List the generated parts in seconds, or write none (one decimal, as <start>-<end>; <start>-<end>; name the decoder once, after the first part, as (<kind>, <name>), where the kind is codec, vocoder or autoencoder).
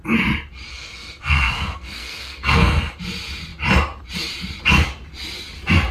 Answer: 0.7-2.8 (codec, SNAC)